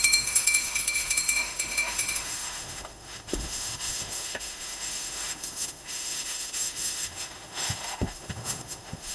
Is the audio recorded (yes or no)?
no